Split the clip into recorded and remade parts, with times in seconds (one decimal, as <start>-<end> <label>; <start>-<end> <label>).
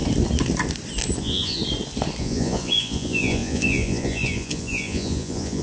0.0-1.2 recorded; 1.2-1.6 remade; 1.6-2.2 recorded; 2.2-5.6 remade